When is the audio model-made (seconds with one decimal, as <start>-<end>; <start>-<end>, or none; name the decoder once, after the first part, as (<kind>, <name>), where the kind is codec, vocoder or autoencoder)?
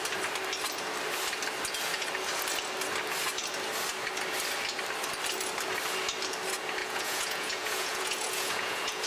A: 6.8-9.1 (vocoder, Vocos)